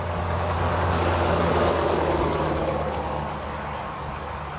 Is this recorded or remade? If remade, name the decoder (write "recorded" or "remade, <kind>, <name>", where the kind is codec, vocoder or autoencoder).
remade, codec, DAC